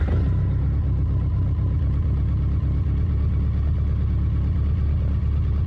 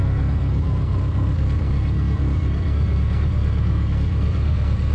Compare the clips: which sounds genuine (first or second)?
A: first